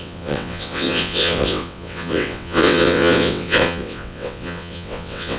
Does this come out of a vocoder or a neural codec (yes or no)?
yes